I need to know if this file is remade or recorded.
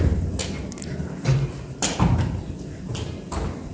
recorded